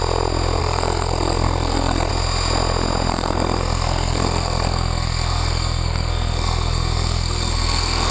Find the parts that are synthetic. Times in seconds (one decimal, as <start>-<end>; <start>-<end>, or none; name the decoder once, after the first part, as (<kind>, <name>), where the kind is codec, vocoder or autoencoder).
0.6-2.1 (codec, SNAC); 3.1-8.1